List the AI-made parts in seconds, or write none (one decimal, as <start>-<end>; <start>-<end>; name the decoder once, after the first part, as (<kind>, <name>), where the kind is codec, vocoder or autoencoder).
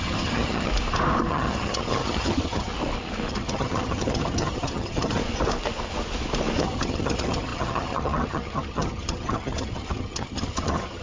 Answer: 0.0-0.7 (vocoder, HiFi-GAN); 1.3-2.7; 3.3-5.2; 6.6-11.0